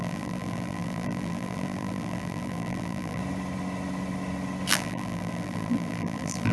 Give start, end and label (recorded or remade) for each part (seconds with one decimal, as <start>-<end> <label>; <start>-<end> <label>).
0.0-3.2 remade; 3.2-4.7 recorded; 4.7-6.5 remade